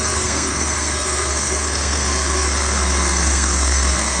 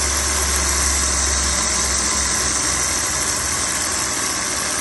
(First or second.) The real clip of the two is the second